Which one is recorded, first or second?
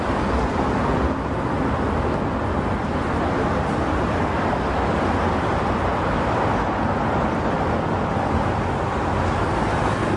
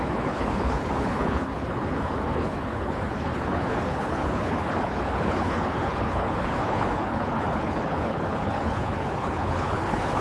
first